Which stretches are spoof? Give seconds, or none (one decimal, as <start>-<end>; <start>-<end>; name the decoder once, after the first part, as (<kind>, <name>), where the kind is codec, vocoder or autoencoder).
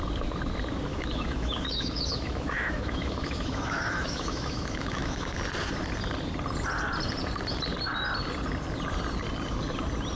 0.9-5.4 (autoencoder, DAC-VAE)